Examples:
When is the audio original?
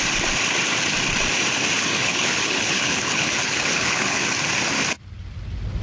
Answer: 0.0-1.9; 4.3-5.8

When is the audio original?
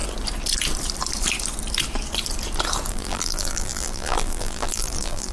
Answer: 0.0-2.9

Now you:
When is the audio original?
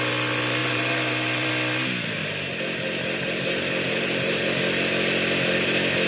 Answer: 0.0-0.6; 1.5-2.2; 4.6-6.1